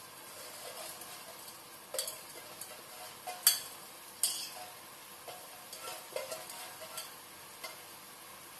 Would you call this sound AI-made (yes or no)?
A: no